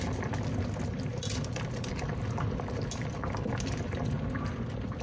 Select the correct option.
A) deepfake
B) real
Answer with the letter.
B